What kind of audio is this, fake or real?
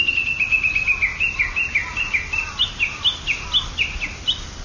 real